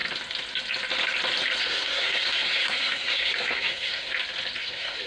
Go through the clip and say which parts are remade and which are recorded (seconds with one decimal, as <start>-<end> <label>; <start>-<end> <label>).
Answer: 0.0-1.6 recorded; 1.6-4.1 remade; 4.1-4.6 recorded; 4.6-5.1 remade